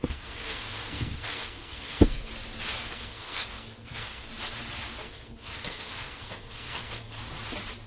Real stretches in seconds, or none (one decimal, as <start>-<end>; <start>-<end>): 2.3-2.8; 4.3-5.0; 7.2-7.9